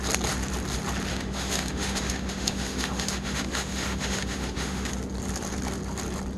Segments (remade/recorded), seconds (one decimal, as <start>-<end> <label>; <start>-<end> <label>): 0.0-1.1 recorded; 1.1-4.9 remade; 4.9-6.4 recorded